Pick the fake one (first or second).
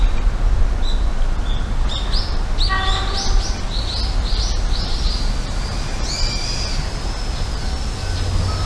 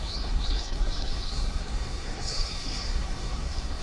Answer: second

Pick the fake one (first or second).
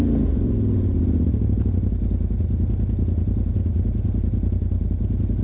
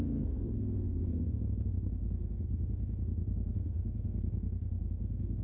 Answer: second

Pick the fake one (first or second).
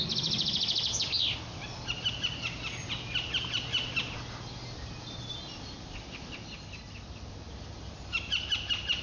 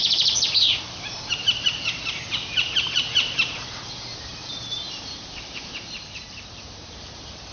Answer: second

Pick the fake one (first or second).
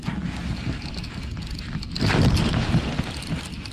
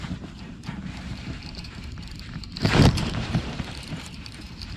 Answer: second